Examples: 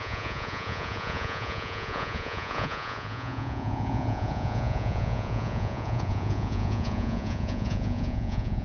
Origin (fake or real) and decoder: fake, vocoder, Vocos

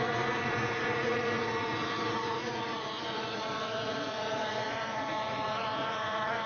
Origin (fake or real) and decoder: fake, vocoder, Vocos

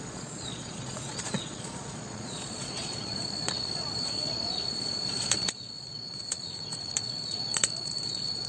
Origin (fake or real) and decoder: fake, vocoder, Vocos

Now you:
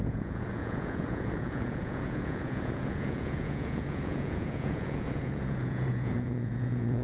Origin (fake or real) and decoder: fake, vocoder, Vocos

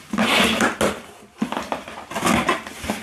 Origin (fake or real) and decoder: real